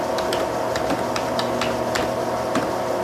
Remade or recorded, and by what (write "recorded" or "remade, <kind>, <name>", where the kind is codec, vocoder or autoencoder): recorded